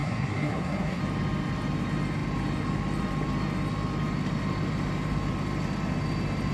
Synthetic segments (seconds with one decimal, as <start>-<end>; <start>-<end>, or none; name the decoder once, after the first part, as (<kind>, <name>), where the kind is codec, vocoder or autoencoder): 0.0-1.0 (codec, SNAC)

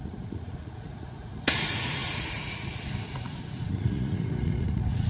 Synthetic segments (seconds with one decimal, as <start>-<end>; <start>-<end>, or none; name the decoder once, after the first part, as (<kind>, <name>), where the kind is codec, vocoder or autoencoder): 0.0-5.1 (vocoder, Vocos)

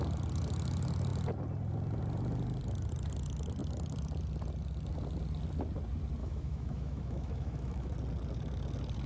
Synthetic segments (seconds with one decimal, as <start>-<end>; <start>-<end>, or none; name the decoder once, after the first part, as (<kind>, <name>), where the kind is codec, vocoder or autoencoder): 6.2-7.9 (autoencoder, DAC-VAE)